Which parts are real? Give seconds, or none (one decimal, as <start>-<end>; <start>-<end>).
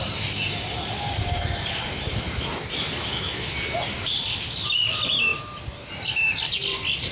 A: 0.0-3.0; 3.5-7.1